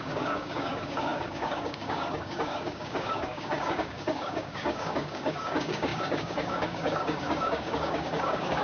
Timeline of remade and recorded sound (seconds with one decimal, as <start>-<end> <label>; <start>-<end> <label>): 0.0-8.6 remade